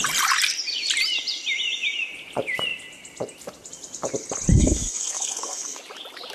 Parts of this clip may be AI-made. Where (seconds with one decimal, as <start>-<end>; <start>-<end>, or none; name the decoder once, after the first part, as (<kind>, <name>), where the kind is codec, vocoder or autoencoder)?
4.5-5.8 (codec, SNAC)